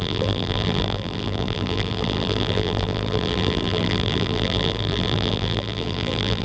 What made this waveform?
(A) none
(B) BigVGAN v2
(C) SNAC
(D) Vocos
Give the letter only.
B